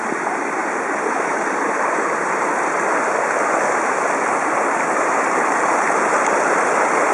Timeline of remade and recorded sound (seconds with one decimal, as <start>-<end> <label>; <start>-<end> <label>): 0.0-7.1 recorded